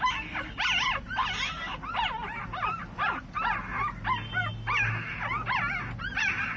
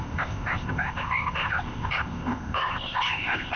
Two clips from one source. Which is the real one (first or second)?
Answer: first